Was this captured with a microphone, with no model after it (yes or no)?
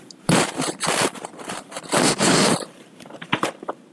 no